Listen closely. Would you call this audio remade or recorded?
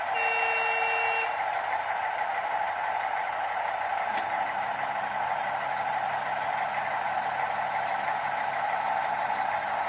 recorded